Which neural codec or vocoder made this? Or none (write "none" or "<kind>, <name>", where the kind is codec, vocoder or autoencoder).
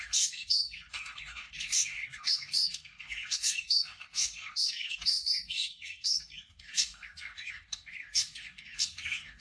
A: codec, DAC